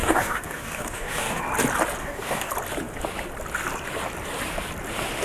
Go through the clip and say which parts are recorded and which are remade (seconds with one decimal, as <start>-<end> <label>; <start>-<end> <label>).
0.0-1.4 remade; 1.4-2.0 recorded; 2.0-2.5 remade; 2.5-5.2 recorded